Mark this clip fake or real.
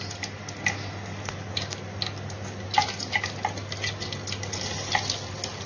real